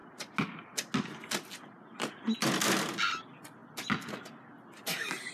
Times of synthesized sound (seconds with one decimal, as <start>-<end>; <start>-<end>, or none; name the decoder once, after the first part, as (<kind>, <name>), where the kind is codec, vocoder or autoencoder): none